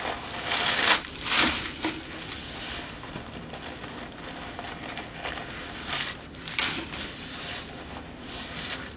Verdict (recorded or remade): recorded